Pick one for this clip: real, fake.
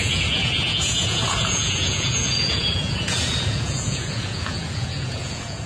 fake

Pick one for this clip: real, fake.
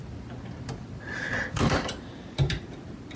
real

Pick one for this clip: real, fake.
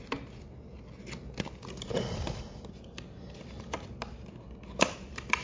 real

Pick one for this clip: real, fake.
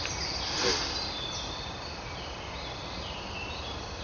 real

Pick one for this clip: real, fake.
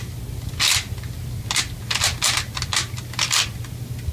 real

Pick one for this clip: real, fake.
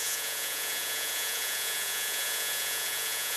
fake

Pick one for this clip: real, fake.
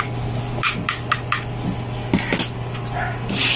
real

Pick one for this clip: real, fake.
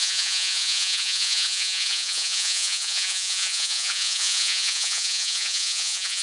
fake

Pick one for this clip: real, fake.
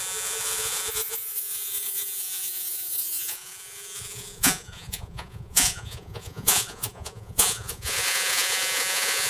fake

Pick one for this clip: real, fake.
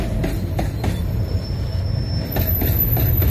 real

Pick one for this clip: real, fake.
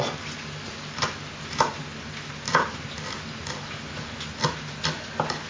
real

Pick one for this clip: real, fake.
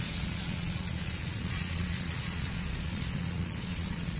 fake